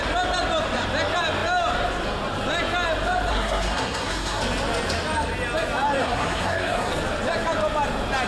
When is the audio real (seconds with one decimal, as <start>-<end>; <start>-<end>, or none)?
0.0-3.3; 4.4-6.0; 6.9-8.3

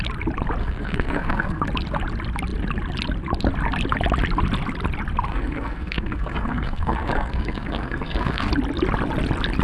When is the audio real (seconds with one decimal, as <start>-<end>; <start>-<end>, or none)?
0.0-0.6; 1.6-5.3; 8.5-9.6

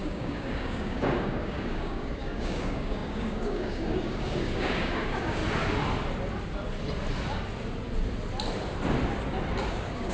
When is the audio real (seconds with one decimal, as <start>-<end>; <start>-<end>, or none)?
5.4-9.7

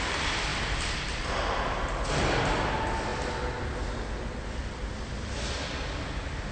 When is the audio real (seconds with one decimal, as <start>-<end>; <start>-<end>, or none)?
0.0-6.5